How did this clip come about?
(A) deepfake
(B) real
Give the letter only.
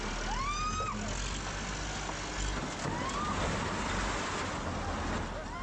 B